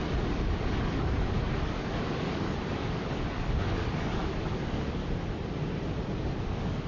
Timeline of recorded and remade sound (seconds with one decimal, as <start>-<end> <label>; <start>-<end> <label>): 0.0-5.0 remade; 5.0-6.5 recorded; 6.5-6.9 remade